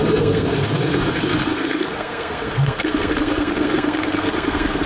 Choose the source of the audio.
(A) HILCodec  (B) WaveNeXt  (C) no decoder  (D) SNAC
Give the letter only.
D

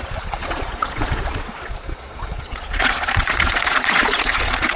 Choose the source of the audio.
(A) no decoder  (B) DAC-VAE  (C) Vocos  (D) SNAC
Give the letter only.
C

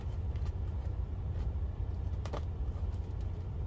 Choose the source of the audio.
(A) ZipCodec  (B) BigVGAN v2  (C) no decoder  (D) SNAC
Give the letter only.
B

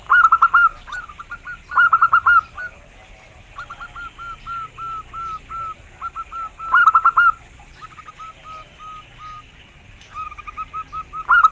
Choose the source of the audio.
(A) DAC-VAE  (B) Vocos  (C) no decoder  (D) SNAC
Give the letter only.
C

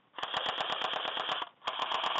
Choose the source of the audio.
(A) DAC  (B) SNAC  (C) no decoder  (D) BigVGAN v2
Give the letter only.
C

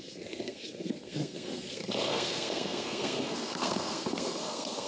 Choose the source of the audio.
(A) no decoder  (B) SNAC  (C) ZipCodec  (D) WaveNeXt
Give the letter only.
B